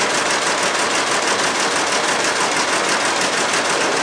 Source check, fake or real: real